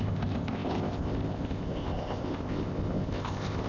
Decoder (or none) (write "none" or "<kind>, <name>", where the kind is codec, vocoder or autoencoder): codec, ZipCodec